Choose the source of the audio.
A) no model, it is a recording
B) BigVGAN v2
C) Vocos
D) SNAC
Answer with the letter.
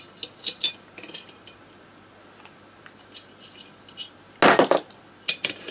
A